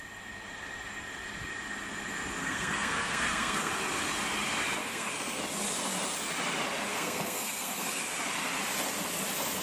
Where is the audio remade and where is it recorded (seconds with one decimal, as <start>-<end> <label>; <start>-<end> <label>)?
0.0-2.4 recorded; 2.4-3.7 remade; 3.7-4.8 recorded; 4.8-5.4 remade; 5.4-6.9 recorded; 6.9-8.0 remade; 8.0-9.6 recorded